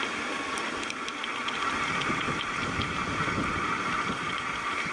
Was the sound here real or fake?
real